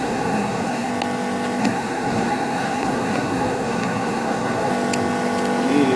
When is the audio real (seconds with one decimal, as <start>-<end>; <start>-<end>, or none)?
0.9-1.6; 4.7-6.0